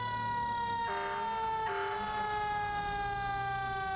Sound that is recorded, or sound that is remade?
recorded